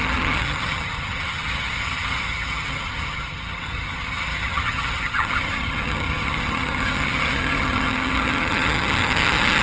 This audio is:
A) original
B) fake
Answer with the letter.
B